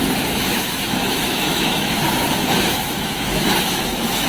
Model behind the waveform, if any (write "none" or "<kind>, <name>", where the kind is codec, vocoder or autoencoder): autoencoder, DAC-VAE